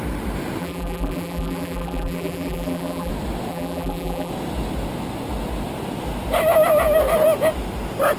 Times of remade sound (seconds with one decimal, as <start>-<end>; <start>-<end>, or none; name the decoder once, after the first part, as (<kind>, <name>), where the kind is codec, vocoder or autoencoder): 0.6-3.1 (vocoder, BigVGAN v2); 3.5-4.3